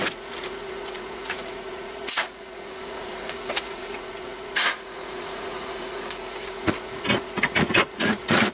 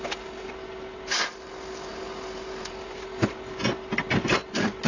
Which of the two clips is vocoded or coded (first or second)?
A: first